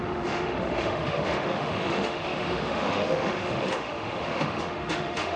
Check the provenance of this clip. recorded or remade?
remade